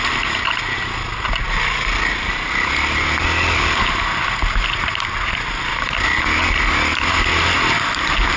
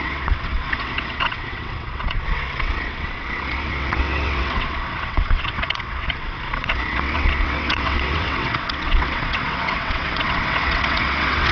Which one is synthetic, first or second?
second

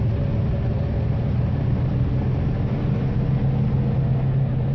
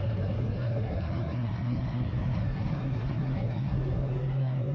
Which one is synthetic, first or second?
second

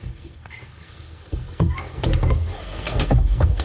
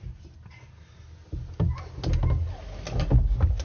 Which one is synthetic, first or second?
first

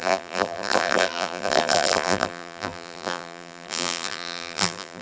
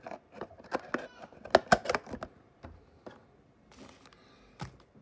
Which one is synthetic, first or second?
first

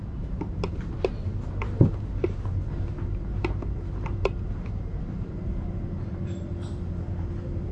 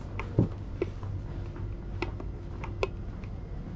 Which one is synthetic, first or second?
first